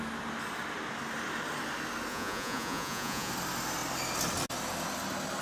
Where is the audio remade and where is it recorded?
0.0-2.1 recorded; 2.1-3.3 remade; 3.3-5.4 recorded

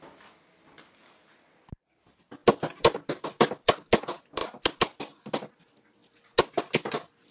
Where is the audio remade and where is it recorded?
0.0-7.3 recorded